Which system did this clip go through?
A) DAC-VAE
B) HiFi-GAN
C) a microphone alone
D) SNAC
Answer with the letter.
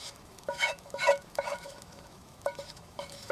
A